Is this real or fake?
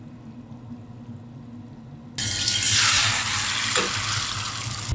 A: real